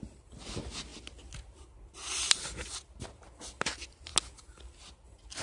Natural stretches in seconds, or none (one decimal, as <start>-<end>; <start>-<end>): 0.0-5.4